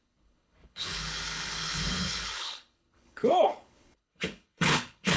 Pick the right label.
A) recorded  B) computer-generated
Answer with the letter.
B